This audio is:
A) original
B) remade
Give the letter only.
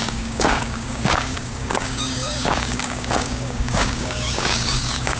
B